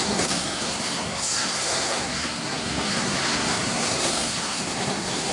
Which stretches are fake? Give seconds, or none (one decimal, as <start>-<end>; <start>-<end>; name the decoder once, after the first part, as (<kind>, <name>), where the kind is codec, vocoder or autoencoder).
0.0-5.3 (codec, SNAC)